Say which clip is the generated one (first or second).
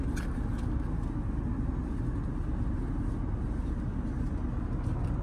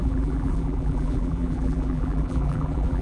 second